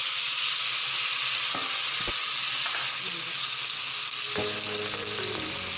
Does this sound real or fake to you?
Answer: real